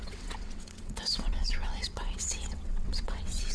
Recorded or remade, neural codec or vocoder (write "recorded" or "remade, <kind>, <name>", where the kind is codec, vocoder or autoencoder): remade, vocoder, WaveNeXt